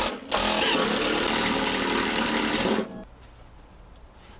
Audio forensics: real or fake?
real